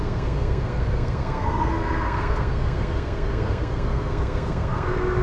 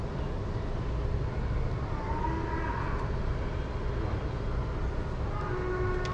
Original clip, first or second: second